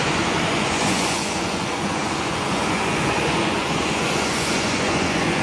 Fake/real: fake